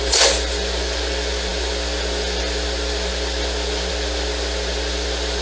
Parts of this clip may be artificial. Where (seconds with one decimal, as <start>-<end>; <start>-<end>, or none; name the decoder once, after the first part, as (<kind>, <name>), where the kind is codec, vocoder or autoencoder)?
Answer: none